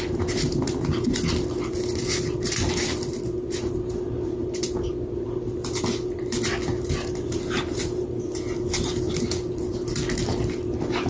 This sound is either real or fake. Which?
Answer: real